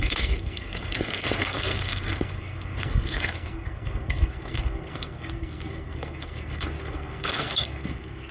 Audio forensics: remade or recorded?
remade